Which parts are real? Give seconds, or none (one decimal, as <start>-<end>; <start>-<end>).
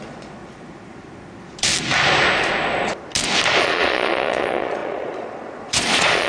0.4-3.6